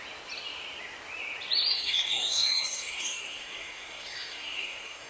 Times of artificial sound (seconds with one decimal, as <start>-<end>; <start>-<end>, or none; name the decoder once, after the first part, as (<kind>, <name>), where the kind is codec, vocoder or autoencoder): 1.7-5.1 (codec, SNAC)